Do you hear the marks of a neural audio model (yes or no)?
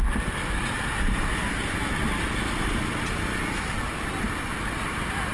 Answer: no